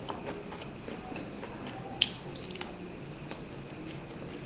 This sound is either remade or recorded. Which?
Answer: recorded